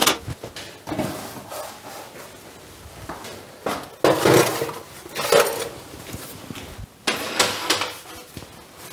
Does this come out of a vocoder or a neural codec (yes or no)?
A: no